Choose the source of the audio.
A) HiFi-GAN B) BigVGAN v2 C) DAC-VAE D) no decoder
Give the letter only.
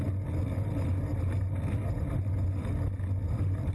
D